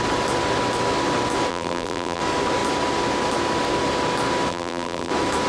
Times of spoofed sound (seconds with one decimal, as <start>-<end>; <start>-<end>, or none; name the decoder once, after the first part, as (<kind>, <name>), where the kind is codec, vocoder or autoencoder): 1.5-2.2 (vocoder, BigVGAN v2); 4.5-5.1